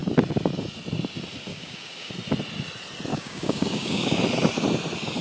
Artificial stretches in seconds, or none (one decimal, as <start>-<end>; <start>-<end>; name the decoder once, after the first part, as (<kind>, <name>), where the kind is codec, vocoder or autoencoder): 1.5-2.1 (codec, DAC); 3.1-4.2